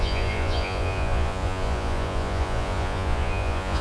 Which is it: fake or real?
fake